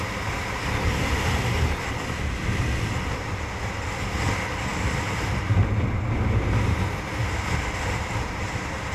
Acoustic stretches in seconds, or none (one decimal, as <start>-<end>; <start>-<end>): 0.0-8.9